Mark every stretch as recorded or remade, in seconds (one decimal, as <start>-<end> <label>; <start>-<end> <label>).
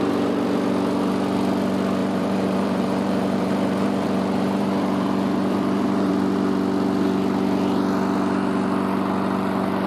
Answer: 0.0-2.0 recorded; 2.0-6.1 remade; 6.1-9.9 recorded